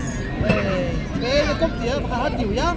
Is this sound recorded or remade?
recorded